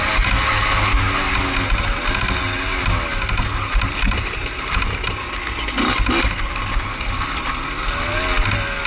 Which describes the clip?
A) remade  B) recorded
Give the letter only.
B